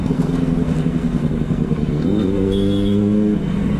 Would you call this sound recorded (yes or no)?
no